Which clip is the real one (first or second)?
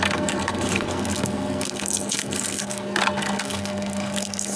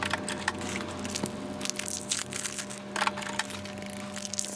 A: second